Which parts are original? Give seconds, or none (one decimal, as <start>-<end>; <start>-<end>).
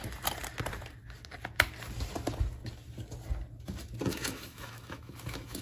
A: 0.0-4.1